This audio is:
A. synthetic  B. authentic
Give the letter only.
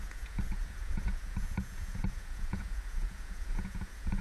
A